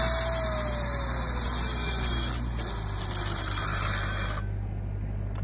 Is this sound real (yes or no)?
yes